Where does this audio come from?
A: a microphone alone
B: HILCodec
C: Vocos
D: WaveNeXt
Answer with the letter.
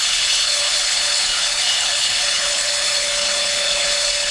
B